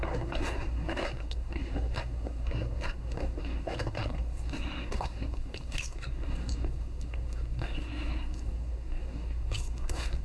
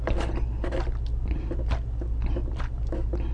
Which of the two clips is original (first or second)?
second